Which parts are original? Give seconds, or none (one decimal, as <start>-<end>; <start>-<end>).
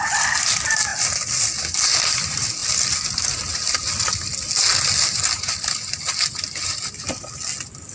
0.0-7.9